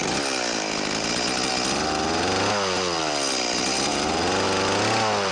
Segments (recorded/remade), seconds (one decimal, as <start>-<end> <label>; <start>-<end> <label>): 0.0-5.3 recorded